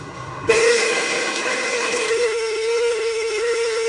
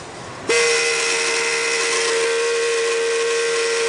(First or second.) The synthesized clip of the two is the first